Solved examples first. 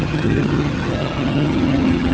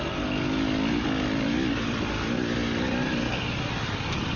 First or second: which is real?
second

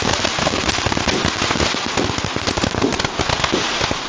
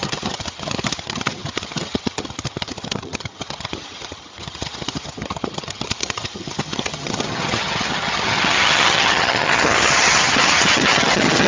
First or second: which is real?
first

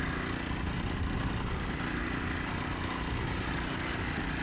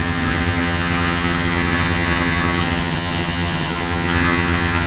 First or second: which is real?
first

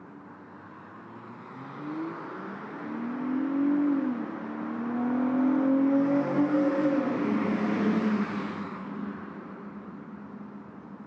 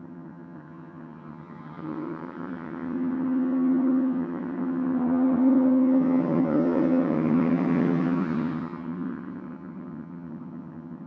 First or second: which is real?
first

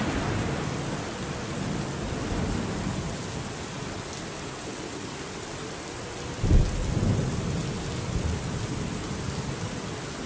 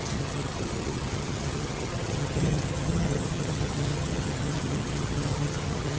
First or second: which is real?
first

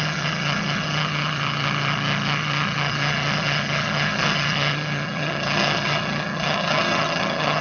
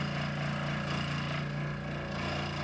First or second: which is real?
second